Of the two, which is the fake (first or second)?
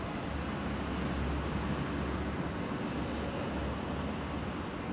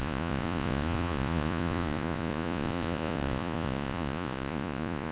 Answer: second